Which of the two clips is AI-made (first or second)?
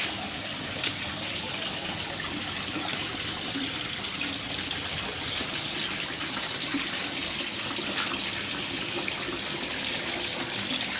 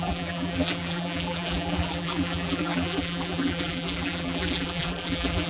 second